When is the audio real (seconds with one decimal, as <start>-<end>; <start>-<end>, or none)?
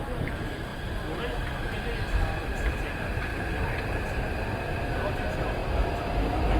0.0-6.6